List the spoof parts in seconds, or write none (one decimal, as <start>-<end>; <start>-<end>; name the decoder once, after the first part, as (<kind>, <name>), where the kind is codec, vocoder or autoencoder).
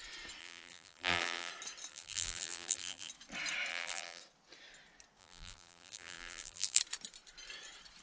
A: 0.4-1.5 (vocoder, BigVGAN v2); 1.9-3.1; 3.7-4.2; 5.2-6.8